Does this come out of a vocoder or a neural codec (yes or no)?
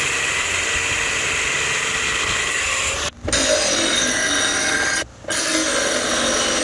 no